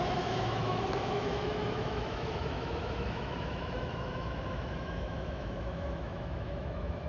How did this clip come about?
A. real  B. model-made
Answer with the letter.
B